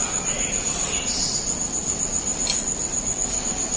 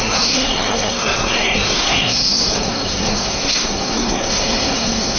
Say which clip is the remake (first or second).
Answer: second